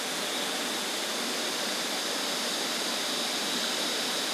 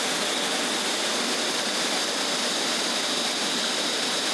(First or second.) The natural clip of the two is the second